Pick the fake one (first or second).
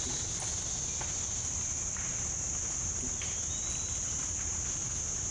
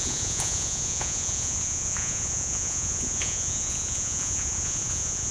second